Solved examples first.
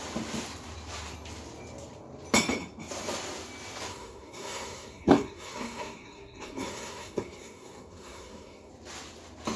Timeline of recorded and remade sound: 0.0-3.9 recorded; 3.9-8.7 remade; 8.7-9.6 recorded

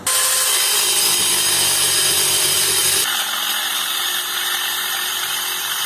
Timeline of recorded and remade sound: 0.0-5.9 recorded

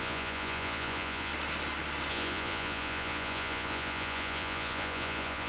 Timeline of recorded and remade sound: 0.0-1.3 remade; 1.3-2.1 recorded; 2.1-5.5 remade

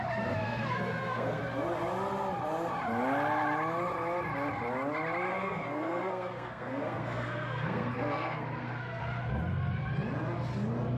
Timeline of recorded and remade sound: 0.0-0.4 recorded; 0.4-1.4 remade; 1.4-5.3 recorded; 5.3-9.0 remade; 9.0-11.0 recorded

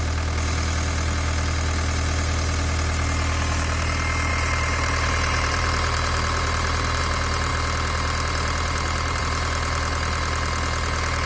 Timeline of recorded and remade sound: 0.0-4.3 recorded; 4.3-7.0 remade; 7.0-11.3 recorded

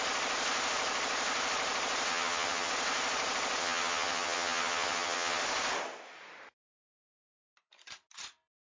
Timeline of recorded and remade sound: 0.0-2.1 recorded; 2.1-2.7 remade; 2.7-3.6 recorded; 3.6-5.4 remade; 5.4-8.7 recorded

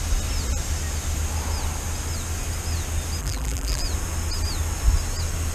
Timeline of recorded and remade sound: 0.0-3.2 recorded; 3.2-3.8 remade; 3.8-5.5 recorded